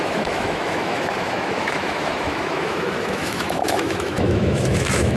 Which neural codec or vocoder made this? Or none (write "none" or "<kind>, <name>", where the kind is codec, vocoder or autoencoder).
autoencoder, DAC-VAE